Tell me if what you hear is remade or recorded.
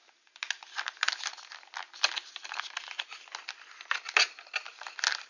recorded